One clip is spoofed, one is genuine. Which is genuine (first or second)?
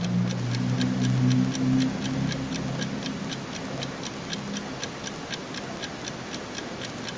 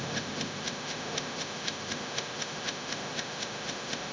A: first